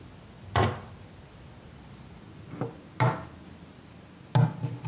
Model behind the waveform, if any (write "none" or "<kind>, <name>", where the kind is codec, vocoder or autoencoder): none